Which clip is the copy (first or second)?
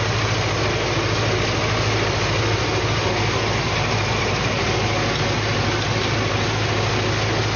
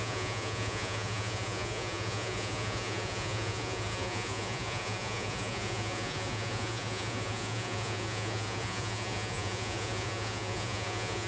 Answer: second